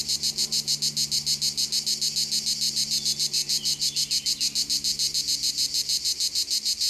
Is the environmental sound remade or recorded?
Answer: recorded